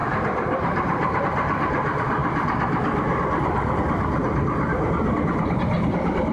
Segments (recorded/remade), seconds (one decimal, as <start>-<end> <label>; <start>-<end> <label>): 0.0-1.2 remade; 1.2-4.2 recorded; 4.2-5.7 remade; 5.7-6.3 recorded